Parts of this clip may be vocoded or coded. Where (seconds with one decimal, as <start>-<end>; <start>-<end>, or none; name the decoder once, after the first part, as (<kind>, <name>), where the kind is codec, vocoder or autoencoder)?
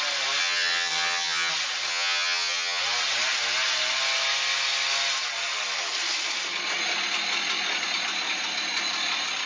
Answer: 0.4-1.5 (vocoder, HiFi-GAN); 1.9-2.8